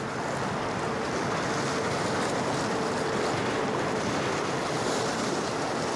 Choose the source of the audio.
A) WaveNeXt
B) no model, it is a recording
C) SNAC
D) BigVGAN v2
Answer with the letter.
B